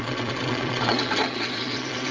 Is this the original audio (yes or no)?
no